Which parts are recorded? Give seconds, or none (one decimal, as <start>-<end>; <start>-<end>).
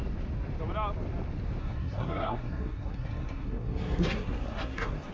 0.0-1.6